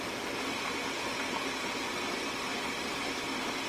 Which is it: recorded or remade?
recorded